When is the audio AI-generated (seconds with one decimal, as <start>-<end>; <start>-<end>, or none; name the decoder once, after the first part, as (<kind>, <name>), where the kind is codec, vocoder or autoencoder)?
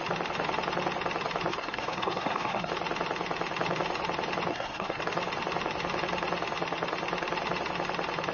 1.5-2.7 (codec, SNAC); 4.5-5.0